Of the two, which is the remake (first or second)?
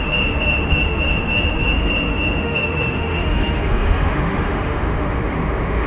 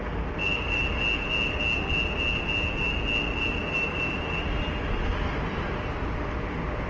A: first